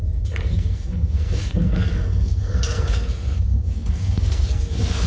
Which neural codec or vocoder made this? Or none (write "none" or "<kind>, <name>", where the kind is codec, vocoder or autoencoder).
codec, SNAC